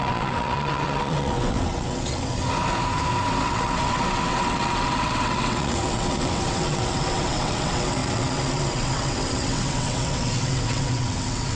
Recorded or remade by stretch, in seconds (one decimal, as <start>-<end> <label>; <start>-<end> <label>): 0.0-2.4 remade; 2.4-3.4 recorded; 3.4-11.6 remade